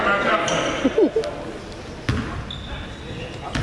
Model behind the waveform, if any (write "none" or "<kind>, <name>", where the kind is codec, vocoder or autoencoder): none